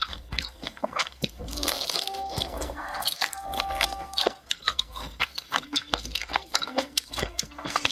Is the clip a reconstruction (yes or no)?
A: yes